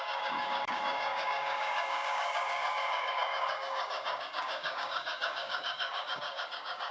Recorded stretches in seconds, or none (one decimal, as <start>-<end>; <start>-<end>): none